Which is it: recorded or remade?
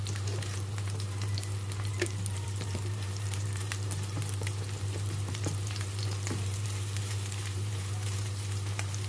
remade